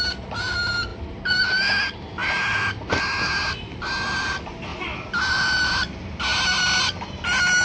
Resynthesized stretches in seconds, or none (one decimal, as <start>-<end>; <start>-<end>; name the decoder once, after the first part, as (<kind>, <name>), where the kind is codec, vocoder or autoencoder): 0.9-1.8 (vocoder, BigVGAN v2); 2.2-3.0; 4.7-5.7